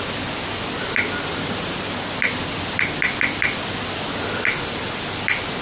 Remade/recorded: recorded